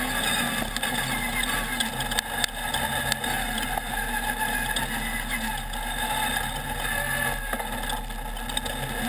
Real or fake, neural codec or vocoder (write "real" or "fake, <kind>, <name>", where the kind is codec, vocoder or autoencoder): real